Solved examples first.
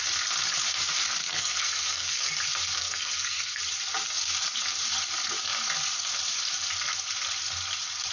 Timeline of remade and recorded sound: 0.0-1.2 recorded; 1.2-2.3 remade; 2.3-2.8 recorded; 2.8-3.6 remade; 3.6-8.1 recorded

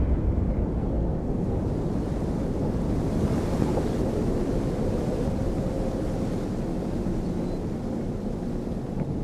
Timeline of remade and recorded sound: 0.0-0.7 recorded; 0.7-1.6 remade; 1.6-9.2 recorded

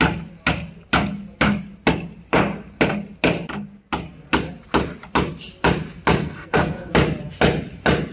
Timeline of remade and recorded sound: 0.0-6.2 recorded; 6.2-6.9 remade; 6.9-8.1 recorded

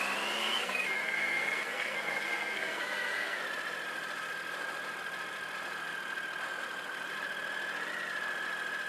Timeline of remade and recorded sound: 0.0-0.4 recorded; 0.4-3.4 remade; 3.4-8.9 recorded

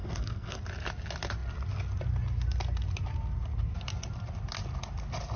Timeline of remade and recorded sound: 0.0-0.6 remade; 0.6-5.4 recorded